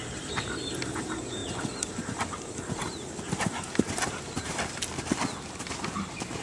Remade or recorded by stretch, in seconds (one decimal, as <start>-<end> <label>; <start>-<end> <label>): 0.0-6.4 recorded